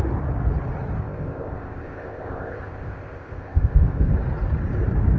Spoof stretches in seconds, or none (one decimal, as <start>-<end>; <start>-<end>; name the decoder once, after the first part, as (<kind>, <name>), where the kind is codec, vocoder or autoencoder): 1.0-4.1 (codec, ZipCodec)